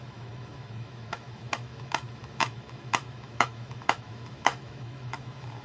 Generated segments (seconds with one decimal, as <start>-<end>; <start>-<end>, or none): 0.0-5.6